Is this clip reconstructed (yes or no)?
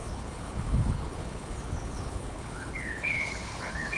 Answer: yes